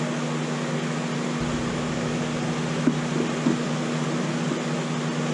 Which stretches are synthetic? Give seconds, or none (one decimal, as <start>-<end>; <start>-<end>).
1.7-2.2